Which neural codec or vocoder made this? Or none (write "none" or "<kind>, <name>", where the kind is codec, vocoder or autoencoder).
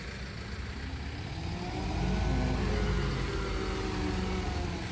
none